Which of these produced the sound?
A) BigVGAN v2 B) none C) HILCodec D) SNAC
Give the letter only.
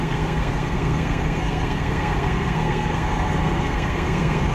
D